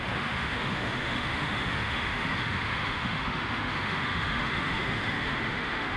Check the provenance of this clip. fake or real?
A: fake